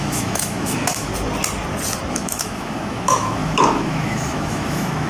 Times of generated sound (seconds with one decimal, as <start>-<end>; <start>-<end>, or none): 0.0-1.1; 2.1-5.1